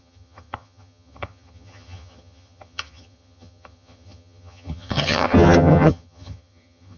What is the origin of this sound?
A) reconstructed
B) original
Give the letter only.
A